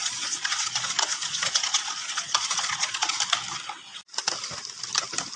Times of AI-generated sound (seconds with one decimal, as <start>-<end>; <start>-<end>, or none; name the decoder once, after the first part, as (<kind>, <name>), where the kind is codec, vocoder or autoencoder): 0.0-3.2 (vocoder, Vocos)